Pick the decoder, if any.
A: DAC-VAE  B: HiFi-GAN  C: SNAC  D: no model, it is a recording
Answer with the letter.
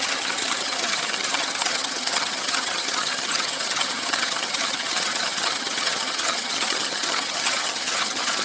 B